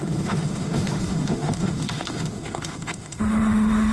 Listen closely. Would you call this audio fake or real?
fake